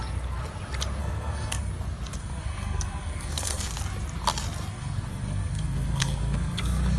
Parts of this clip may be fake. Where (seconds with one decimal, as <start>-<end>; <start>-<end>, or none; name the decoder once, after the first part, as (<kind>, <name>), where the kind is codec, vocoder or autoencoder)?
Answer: 1.0-1.7 (codec, SNAC); 2.2-3.7; 4.7-7.0